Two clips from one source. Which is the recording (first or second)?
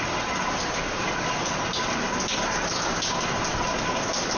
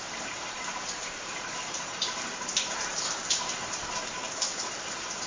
first